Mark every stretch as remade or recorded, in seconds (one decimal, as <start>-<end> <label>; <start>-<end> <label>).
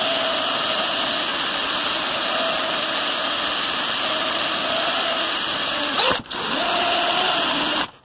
0.0-8.0 recorded